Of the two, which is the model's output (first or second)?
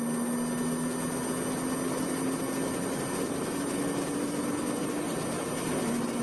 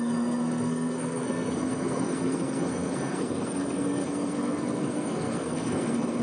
second